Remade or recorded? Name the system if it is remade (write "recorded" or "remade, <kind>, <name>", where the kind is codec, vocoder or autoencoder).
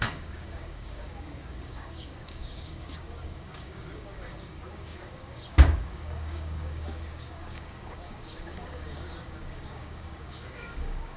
remade, codec, DAC